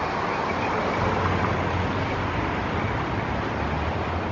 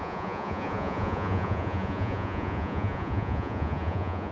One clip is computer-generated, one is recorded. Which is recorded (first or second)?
first